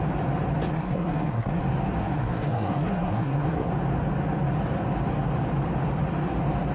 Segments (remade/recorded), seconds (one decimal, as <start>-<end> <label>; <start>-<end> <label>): 0.0-0.7 recorded; 0.7-1.6 remade; 1.6-2.0 recorded; 2.0-3.7 remade; 3.7-6.7 recorded